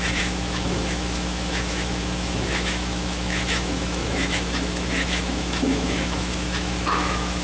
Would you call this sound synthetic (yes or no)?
yes